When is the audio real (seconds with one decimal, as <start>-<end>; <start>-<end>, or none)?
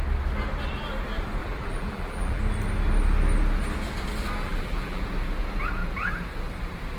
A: 0.0-1.4; 2.4-4.4; 5.0-7.0